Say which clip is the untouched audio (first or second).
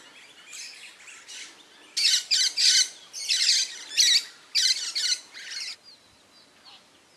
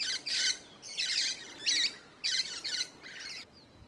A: first